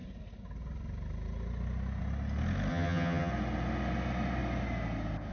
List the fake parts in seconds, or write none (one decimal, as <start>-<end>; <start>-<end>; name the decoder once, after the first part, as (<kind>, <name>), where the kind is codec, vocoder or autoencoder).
2.7-3.3 (vocoder, HiFi-GAN)